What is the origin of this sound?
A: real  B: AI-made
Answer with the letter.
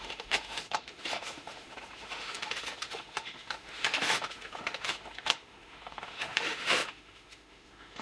B